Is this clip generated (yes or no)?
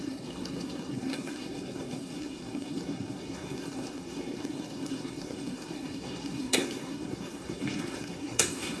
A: yes